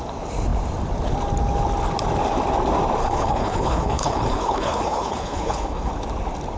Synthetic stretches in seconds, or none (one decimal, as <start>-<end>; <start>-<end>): 3.0-5.9